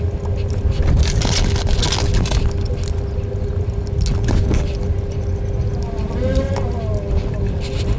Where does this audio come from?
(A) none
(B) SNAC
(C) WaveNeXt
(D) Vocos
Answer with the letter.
A